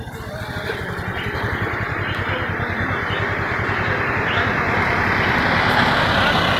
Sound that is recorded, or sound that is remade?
recorded